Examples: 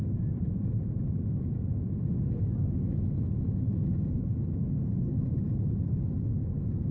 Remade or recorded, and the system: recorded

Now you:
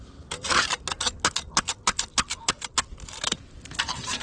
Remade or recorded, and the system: recorded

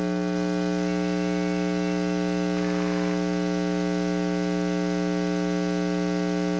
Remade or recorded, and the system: recorded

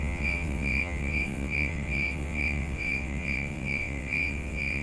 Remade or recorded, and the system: remade, vocoder, WaveNeXt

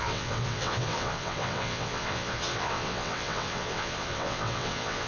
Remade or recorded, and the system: remade, vocoder, WaveNeXt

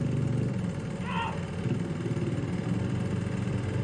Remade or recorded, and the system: recorded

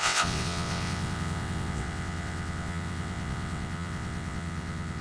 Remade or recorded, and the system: remade, vocoder, WaveNeXt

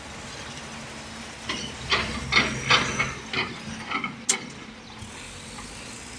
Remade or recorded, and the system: recorded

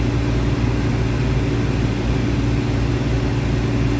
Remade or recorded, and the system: recorded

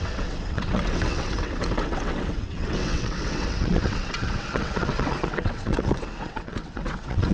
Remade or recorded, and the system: remade, vocoder, WaveNeXt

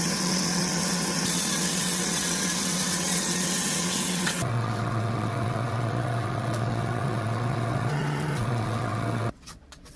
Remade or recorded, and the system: remade, vocoder, WaveNeXt